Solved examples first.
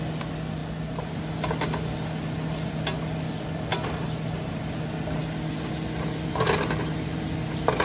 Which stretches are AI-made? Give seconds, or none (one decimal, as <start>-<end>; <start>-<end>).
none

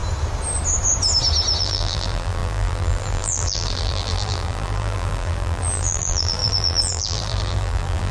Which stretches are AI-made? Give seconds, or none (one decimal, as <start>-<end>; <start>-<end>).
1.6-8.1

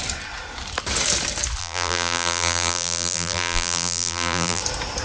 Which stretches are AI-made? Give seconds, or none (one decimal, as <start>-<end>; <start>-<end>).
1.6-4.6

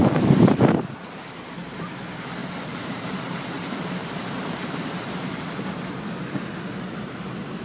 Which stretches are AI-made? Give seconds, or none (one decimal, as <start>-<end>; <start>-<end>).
0.0-0.6; 2.4-4.1

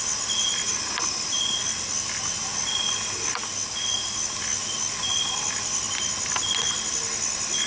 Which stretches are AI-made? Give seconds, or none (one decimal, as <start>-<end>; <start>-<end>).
none

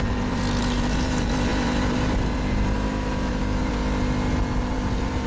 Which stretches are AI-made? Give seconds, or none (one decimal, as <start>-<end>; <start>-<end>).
0.0-3.8; 4.6-5.3

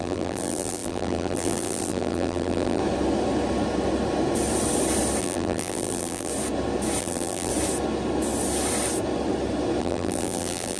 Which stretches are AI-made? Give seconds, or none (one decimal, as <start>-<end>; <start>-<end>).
0.0-2.8; 5.2-6.3; 7.0-7.5; 9.8-10.8

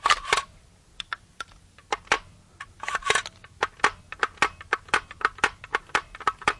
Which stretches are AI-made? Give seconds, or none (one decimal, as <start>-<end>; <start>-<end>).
0.0-1.8; 5.8-6.6